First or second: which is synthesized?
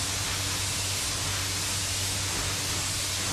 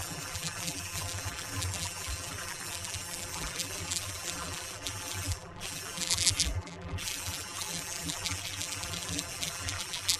second